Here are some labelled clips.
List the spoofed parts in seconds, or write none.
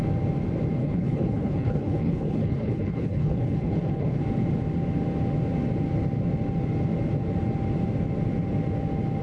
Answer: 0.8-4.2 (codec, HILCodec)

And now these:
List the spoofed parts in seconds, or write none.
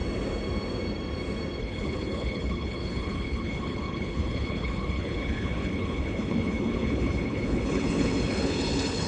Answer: 1.6-9.1 (codec, HILCodec)